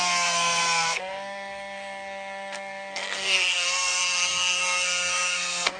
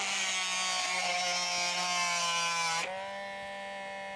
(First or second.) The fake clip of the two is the first